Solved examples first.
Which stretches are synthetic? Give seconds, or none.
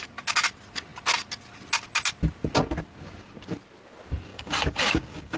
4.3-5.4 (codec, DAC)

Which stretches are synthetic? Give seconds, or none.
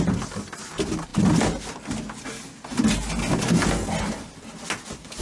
none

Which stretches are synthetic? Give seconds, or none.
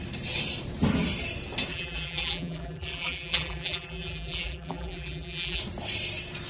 1.7-5.6 (vocoder, BigVGAN v2)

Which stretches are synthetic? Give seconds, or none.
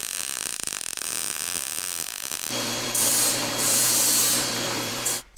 0.0-1.1 (vocoder, BigVGAN v2); 2.5-5.4